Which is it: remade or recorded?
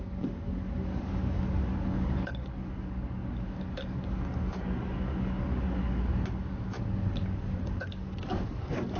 remade